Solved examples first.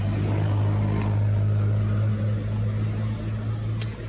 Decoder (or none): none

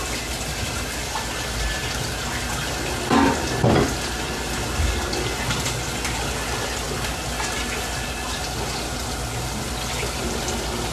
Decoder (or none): none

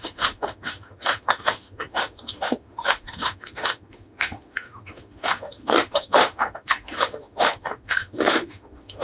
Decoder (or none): autoencoder, DAC-VAE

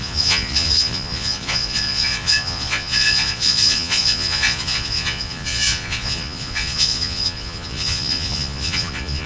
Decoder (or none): vocoder, Vocos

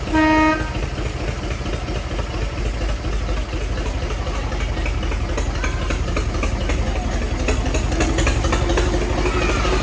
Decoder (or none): none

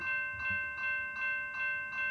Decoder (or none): none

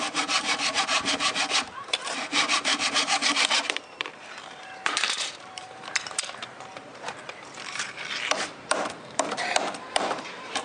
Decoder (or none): vocoder, BigVGAN v2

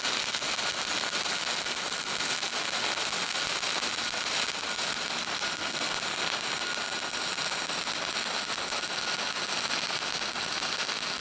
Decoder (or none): none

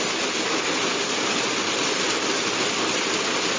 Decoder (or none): none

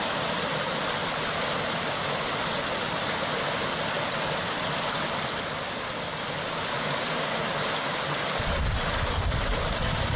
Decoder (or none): none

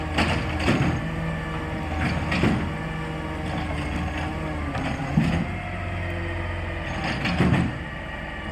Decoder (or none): none